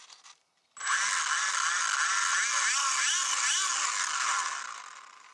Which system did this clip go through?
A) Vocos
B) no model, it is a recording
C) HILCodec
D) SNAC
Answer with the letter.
B